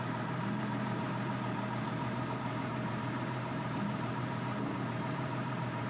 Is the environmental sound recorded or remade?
remade